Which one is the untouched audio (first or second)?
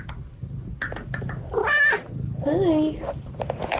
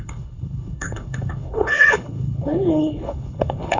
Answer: first